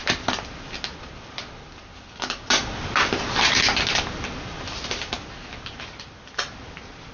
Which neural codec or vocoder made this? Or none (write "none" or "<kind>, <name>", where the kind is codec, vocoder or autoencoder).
none